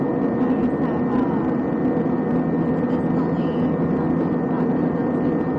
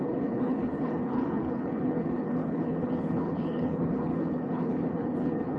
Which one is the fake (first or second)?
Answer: second